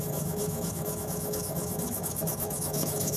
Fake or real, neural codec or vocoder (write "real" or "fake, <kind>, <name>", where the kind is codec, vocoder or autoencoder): fake, autoencoder, DAC-VAE